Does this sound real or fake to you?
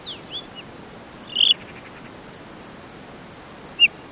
real